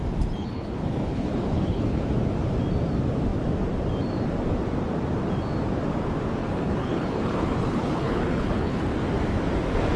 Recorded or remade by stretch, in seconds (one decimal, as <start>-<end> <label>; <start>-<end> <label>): 0.0-0.4 recorded; 0.4-2.0 remade; 2.0-6.4 recorded; 6.4-8.9 remade; 8.9-10.0 recorded